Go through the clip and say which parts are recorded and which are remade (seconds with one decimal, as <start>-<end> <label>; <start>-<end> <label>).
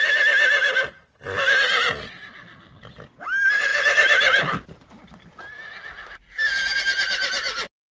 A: 0.0-3.7 recorded; 3.7-5.4 remade; 5.4-7.9 recorded